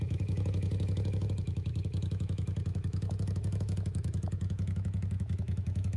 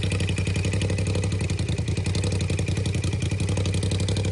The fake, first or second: first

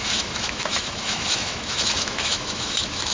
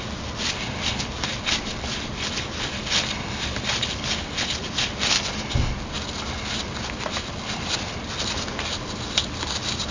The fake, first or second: first